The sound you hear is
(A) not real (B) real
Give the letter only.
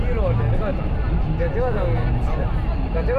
B